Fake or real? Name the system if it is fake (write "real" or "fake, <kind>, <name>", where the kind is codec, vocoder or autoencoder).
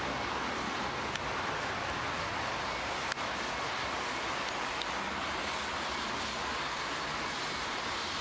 real